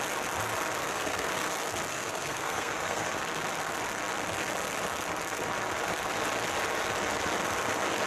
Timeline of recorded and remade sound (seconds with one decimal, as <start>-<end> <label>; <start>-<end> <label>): 0.0-0.8 recorded; 0.8-1.5 remade; 1.5-1.9 recorded; 1.9-3.2 remade; 3.2-8.1 recorded